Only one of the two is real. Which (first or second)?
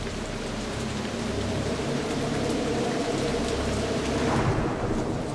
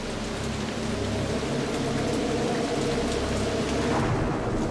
second